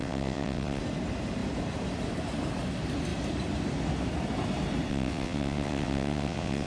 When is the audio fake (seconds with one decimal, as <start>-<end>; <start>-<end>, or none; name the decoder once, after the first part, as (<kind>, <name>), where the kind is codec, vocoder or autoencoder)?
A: 0.0-0.8 (vocoder, WaveNeXt); 4.9-6.7